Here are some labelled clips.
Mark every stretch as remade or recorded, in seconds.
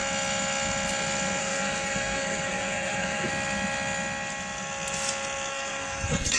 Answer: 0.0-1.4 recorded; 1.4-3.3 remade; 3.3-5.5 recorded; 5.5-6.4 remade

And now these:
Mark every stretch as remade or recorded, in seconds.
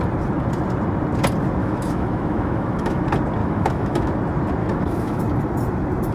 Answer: 0.0-1.6 recorded; 1.6-3.0 remade; 3.0-3.4 recorded; 3.4-4.1 remade; 4.1-4.6 recorded; 4.6-5.2 remade; 5.2-6.1 recorded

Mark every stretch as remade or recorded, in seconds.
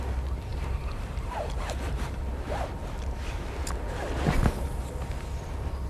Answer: 0.0-0.5 recorded; 0.5-2.2 remade; 2.2-5.9 recorded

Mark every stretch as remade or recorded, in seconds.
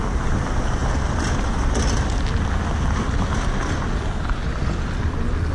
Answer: 0.0-5.5 recorded